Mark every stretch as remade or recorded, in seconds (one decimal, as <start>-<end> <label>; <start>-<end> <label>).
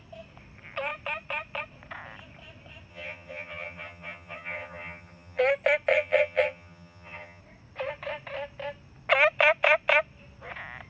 0.0-2.9 recorded; 2.9-5.4 remade; 5.4-5.9 recorded; 5.9-7.4 remade; 7.4-10.9 recorded